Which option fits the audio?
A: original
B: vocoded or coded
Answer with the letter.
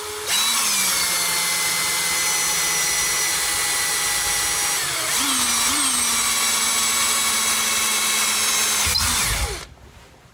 A